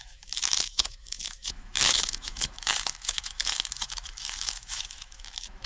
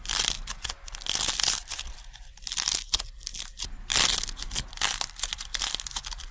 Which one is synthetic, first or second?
first